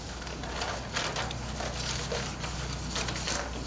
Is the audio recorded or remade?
recorded